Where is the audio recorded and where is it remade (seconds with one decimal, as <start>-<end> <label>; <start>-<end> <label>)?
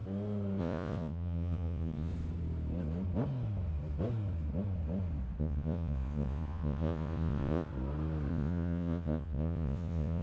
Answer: 0.0-0.6 recorded; 0.6-2.1 remade; 2.1-5.4 recorded; 5.4-7.7 remade; 7.7-8.3 recorded; 8.3-10.2 remade